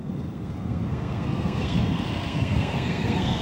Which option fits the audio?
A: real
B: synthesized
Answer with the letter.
B